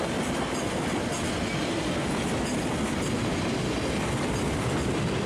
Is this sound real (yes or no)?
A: yes